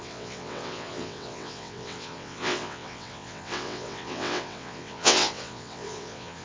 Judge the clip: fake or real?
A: fake